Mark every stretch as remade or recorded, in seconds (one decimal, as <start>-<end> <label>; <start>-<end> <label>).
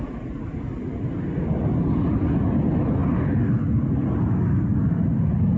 0.0-5.6 recorded